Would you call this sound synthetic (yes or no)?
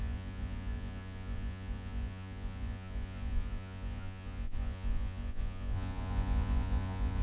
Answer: yes